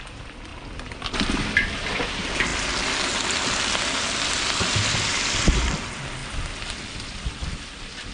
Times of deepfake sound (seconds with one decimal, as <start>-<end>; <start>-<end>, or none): 0.0-0.5; 1.3-8.1